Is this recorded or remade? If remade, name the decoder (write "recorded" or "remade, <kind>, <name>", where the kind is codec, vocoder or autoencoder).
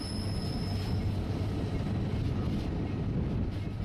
recorded